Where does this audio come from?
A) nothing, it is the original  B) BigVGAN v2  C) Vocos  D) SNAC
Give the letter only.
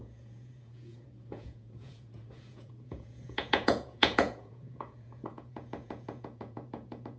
C